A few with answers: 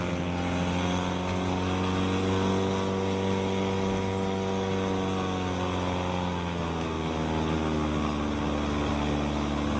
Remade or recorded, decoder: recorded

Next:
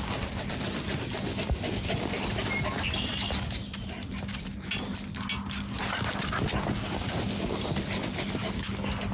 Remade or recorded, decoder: recorded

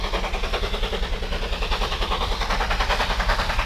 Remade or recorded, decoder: recorded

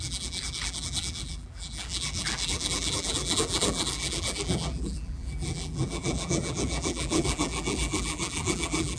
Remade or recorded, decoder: remade, vocoder, BigVGAN v2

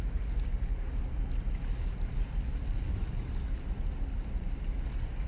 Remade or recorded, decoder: recorded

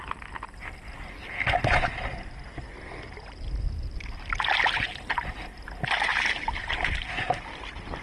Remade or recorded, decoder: recorded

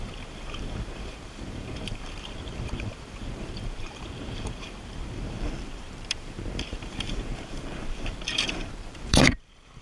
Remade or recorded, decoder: remade, vocoder, BigVGAN v2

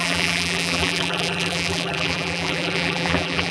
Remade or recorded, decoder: remade, vocoder, BigVGAN v2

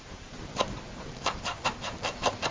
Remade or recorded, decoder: remade, vocoder, BigVGAN v2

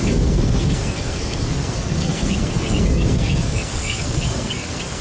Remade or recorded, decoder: remade, codec, SNAC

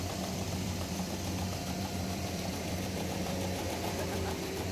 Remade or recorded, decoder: remade, vocoder, BigVGAN v2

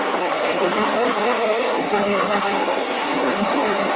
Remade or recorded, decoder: remade, codec, SNAC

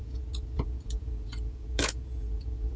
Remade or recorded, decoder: remade, vocoder, Vocos